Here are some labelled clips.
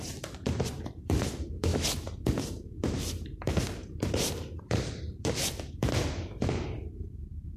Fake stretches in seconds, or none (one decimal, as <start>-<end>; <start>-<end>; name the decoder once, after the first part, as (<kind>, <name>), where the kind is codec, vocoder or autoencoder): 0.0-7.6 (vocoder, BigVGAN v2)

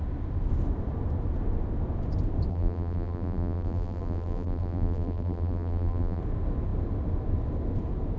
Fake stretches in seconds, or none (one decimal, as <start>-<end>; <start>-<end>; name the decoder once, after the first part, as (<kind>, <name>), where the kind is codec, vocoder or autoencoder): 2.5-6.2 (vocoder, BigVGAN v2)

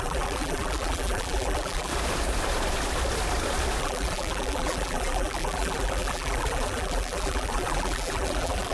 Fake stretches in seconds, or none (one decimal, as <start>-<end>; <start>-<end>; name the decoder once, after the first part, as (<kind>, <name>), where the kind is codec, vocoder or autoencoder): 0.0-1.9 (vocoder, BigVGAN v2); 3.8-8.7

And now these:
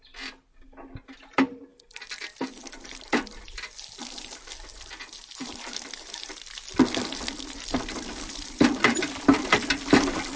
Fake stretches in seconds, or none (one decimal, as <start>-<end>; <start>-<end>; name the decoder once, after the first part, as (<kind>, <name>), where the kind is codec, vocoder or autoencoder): none

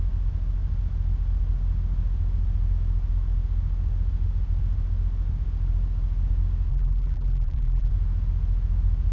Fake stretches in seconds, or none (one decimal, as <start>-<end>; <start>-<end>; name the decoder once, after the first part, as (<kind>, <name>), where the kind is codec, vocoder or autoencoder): 6.7-7.9 (vocoder, BigVGAN v2)

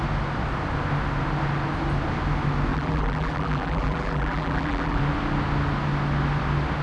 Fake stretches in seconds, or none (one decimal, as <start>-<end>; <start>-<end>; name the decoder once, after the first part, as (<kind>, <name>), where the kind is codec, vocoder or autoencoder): 2.7-5.0 (vocoder, BigVGAN v2)

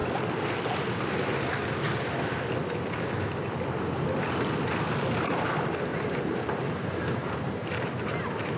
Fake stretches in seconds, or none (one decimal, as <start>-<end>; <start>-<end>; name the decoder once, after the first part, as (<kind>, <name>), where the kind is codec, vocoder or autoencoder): 5.9-8.6 (vocoder, BigVGAN v2)

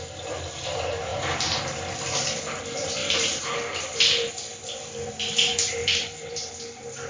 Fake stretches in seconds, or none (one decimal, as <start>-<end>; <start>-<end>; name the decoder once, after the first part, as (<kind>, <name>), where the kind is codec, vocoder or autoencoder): 1.1-2.6 (vocoder, BigVGAN v2); 3.0-5.1; 5.8-6.5